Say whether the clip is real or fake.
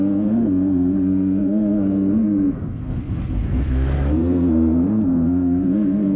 fake